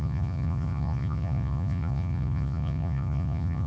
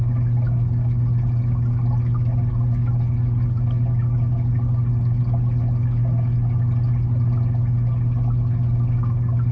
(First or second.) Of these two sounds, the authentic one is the second